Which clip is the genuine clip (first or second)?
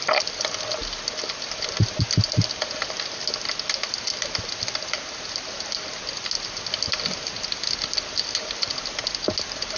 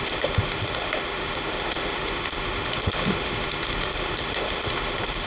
first